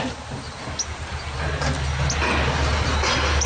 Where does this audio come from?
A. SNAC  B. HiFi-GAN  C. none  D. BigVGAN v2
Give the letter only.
C